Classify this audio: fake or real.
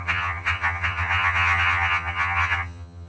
fake